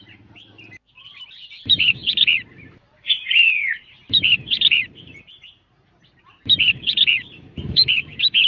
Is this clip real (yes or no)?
no